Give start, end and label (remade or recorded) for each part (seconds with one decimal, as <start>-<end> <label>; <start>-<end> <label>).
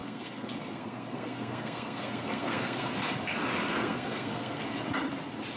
0.0-2.9 remade; 2.9-3.7 recorded; 3.7-4.6 remade; 4.6-5.6 recorded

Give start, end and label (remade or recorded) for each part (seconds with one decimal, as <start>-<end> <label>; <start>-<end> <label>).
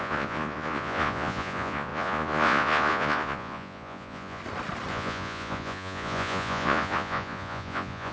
0.0-4.4 remade; 4.4-4.9 recorded; 4.9-8.1 remade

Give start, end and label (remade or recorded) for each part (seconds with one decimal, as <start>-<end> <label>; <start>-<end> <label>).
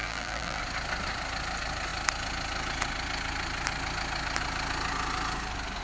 0.0-0.6 remade; 0.6-5.8 recorded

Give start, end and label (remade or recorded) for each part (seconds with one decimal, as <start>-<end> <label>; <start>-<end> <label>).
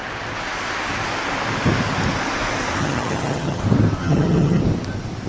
0.0-2.8 recorded; 2.8-3.6 remade; 3.6-4.0 recorded; 4.0-4.6 remade; 4.6-5.3 recorded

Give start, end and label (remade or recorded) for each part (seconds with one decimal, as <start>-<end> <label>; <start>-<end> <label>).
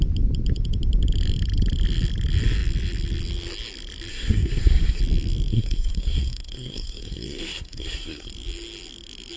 0.0-4.1 recorded; 4.1-5.0 remade; 5.0-5.5 recorded; 5.5-8.3 remade; 8.3-9.4 recorded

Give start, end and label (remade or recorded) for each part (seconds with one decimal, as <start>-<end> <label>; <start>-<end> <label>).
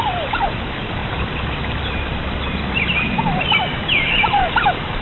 0.0-1.0 remade; 1.0-3.4 recorded; 3.4-5.0 remade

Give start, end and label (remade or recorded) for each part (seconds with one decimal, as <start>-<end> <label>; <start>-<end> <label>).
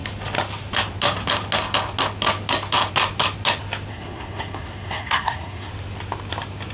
0.0-3.9 recorded; 3.9-5.7 remade; 5.7-6.7 recorded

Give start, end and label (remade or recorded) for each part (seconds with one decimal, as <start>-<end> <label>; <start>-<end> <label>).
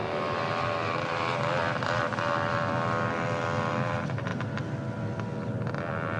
0.0-6.2 recorded